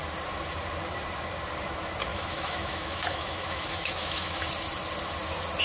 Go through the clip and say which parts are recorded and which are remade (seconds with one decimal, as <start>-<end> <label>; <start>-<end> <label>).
0.0-2.1 recorded; 2.1-4.5 remade; 4.5-5.6 recorded